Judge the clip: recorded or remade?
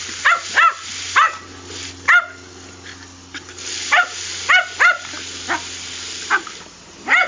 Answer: recorded